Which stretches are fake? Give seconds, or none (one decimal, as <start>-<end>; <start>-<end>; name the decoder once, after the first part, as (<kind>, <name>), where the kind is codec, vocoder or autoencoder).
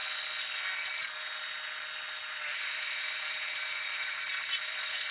2.5-5.1 (vocoder, BigVGAN v2)